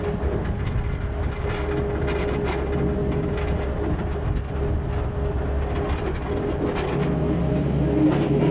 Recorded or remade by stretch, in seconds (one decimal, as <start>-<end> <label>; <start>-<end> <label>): 0.0-8.5 recorded